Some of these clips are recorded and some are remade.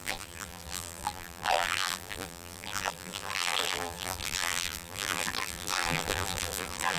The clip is remade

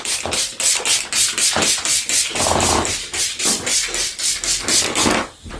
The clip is recorded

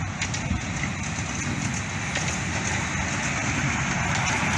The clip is recorded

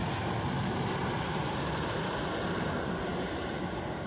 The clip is remade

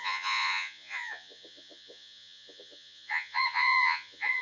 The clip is remade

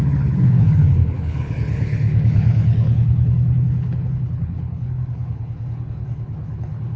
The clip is remade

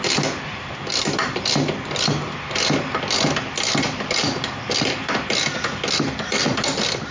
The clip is recorded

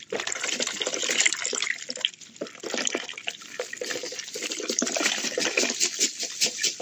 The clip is recorded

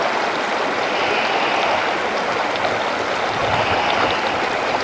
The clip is recorded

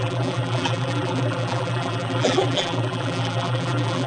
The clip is remade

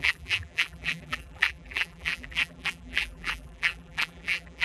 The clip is remade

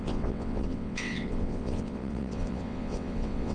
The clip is remade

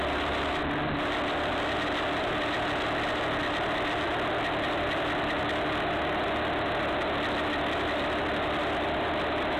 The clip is recorded